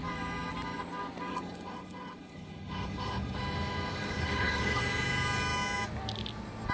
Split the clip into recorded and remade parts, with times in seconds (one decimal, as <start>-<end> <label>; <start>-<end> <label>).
0.0-1.3 recorded; 1.3-3.4 remade; 3.4-3.9 recorded; 3.9-4.8 remade; 4.8-6.7 recorded